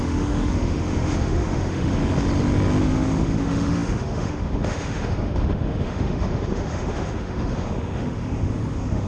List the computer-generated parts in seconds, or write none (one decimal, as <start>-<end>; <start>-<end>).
0.0-2.0; 2.8-9.1